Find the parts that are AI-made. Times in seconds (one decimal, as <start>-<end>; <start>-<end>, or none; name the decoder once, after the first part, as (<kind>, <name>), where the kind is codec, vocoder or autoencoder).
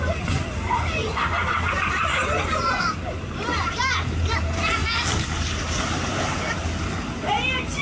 0.0-1.1 (vocoder, BigVGAN v2); 1.7-4.8; 5.8-6.6; 7.2-7.8